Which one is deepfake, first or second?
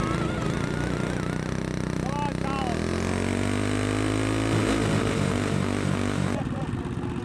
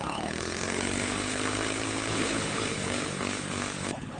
second